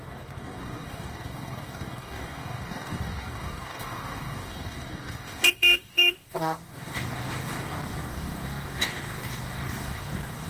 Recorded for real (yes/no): no